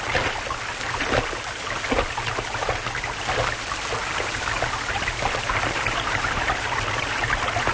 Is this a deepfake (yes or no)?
no